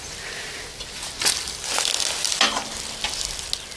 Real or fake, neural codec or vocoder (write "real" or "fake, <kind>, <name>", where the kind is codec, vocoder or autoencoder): real